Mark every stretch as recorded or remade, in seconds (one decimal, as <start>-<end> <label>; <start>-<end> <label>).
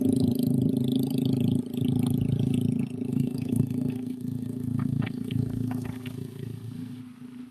0.0-3.1 recorded; 3.1-7.0 remade; 7.0-7.5 recorded